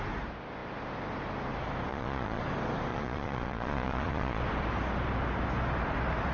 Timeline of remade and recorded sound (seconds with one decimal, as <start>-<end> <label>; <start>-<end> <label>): 0.0-1.9 recorded; 1.9-2.4 remade; 2.4-2.9 recorded; 2.9-4.4 remade; 4.4-6.3 recorded